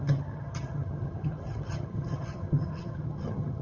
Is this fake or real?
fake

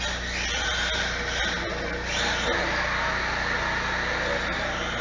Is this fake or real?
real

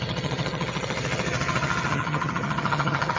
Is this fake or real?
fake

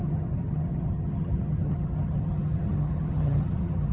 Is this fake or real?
fake